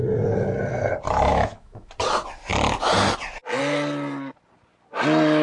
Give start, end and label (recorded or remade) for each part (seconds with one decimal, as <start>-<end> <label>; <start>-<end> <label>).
0.0-1.3 recorded; 1.3-1.9 remade; 1.9-5.4 recorded